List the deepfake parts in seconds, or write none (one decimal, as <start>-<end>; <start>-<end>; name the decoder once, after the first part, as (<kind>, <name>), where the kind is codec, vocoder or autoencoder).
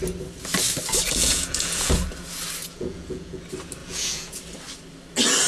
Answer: 1.2-1.9 (vocoder, Vocos); 2.6-3.4; 3.8-4.4